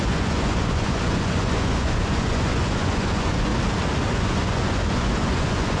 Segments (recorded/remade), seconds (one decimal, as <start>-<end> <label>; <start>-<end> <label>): 0.0-3.5 remade; 3.5-4.1 recorded; 4.1-5.8 remade